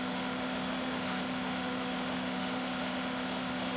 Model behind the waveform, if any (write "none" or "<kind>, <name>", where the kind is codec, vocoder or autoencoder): autoencoder, DAC-VAE